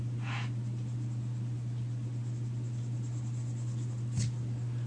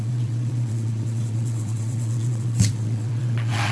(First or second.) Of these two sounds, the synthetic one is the second